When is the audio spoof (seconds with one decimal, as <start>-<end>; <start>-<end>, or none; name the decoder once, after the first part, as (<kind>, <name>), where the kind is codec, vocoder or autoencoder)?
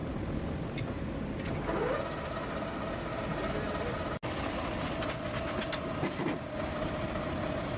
0.0-0.8 (vocoder, BigVGAN v2)